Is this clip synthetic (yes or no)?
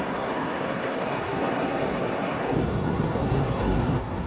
yes